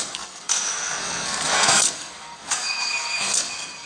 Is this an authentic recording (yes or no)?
no